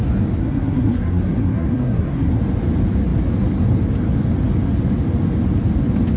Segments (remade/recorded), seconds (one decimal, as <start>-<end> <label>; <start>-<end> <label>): 0.0-0.4 recorded; 0.4-2.4 remade; 2.4-6.2 recorded